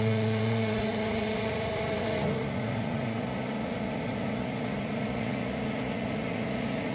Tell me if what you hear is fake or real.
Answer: fake